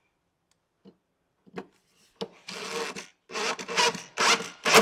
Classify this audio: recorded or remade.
recorded